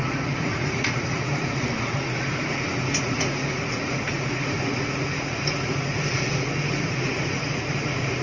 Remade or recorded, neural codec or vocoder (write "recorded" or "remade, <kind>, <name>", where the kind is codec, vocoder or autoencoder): remade, vocoder, Vocos